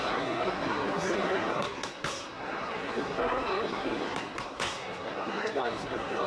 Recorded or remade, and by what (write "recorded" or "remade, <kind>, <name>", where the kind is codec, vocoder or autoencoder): remade, codec, SNAC